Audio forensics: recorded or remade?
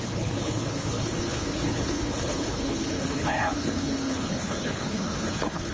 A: remade